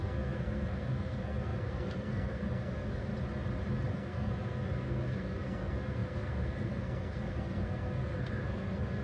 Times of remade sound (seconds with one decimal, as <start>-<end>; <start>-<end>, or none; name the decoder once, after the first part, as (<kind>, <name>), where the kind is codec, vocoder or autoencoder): 0.0-3.1 (codec, SNAC); 3.9-9.0